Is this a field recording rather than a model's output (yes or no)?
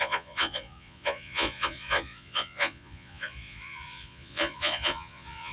no